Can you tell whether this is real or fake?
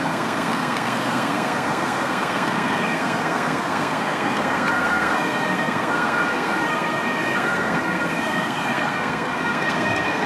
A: fake